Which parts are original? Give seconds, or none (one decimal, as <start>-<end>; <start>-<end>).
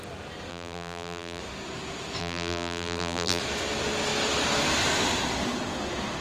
0.0-0.5; 1.4-2.2; 3.4-6.2